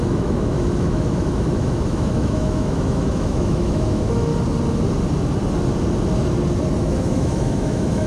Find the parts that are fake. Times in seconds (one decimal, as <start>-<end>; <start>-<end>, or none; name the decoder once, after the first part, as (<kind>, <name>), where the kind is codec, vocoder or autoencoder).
0.0-4.3 (autoencoder, DAC-VAE); 6.8-8.1